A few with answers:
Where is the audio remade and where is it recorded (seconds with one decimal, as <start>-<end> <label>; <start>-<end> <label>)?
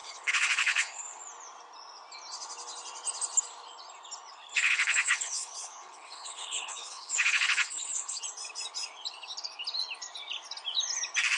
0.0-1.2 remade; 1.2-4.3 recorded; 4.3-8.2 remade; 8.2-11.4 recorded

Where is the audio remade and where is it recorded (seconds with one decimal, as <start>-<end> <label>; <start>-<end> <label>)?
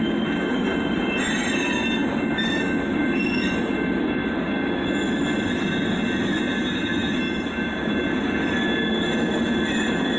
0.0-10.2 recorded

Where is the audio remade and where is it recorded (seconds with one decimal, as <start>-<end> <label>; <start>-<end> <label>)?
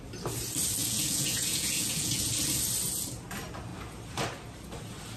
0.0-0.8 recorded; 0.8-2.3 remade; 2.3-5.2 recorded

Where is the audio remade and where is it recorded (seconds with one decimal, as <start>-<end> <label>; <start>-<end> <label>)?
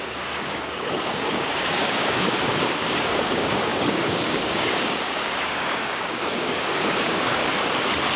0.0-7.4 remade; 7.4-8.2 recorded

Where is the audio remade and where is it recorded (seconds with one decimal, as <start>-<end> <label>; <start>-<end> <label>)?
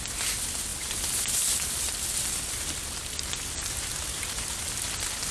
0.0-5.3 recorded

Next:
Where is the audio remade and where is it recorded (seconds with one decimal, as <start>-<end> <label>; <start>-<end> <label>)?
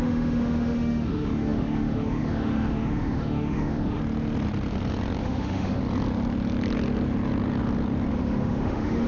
0.0-4.0 remade; 4.0-5.2 recorded; 5.2-5.8 remade; 5.8-8.1 recorded; 8.1-9.1 remade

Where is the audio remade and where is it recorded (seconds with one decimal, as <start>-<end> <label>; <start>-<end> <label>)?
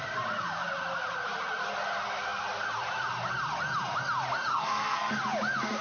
0.0-4.5 recorded; 4.5-5.1 remade; 5.1-5.8 recorded